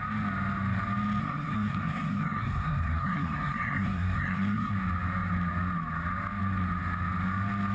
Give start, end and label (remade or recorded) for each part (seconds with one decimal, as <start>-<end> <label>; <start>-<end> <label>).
0.0-1.2 recorded; 1.2-4.7 remade; 4.7-7.7 recorded